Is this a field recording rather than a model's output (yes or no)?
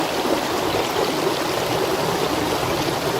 yes